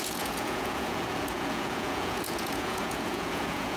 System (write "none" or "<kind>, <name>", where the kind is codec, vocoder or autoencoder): vocoder, Vocos